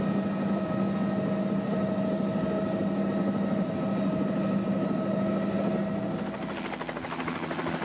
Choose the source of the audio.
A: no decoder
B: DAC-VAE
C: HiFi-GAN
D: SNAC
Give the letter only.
A